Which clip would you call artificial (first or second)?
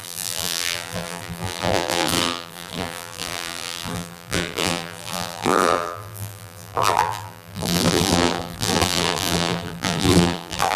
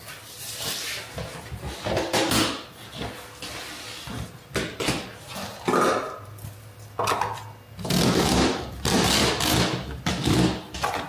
first